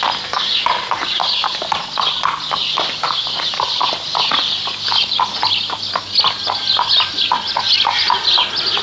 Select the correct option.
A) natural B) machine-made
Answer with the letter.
A